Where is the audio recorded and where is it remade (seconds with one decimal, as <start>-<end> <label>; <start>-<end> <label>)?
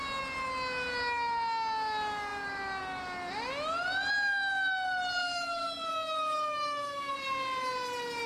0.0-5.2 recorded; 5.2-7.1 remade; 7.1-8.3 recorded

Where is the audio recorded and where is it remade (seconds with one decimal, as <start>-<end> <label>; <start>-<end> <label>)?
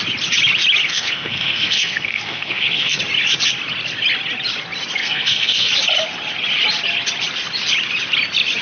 0.0-0.9 recorded; 0.9-3.0 remade; 3.0-5.0 recorded; 5.0-5.7 remade; 5.7-8.6 recorded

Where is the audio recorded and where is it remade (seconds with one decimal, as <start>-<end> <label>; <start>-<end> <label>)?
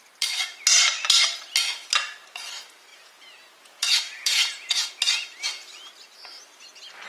0.0-2.9 recorded; 2.9-4.9 remade; 4.9-7.1 recorded